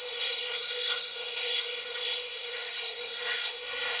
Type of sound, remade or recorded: remade